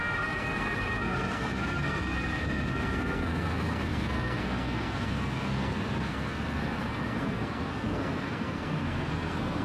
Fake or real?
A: fake